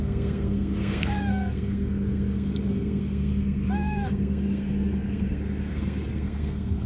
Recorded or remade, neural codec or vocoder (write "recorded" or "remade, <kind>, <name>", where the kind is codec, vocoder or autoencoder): remade, codec, SNAC